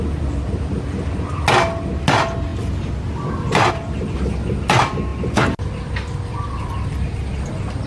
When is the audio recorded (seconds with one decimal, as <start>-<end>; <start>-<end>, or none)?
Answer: 0.0-7.9

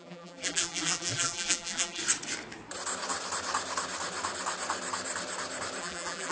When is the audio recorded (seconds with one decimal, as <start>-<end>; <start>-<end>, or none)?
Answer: 2.0-5.8

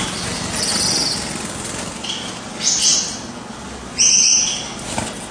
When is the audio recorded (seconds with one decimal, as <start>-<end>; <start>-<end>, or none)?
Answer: 0.0-5.3

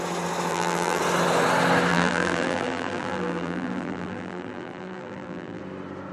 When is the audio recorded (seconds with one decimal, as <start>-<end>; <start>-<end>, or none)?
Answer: 0.0-0.5; 1.0-1.9; 5.6-6.1

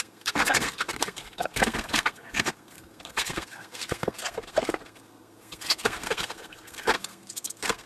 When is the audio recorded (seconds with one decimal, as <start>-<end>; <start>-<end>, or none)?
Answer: none